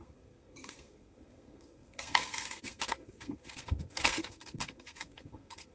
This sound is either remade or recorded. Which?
remade